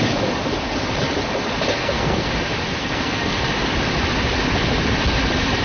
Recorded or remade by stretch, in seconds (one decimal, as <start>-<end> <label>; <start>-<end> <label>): 0.0-1.8 recorded; 1.8-2.3 remade; 2.3-2.8 recorded; 2.8-3.5 remade; 3.5-5.6 recorded